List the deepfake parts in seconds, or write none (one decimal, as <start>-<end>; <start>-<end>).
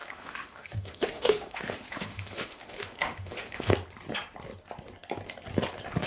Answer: 0.0-3.7